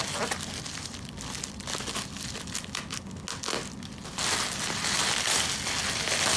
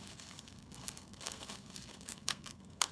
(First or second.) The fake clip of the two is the second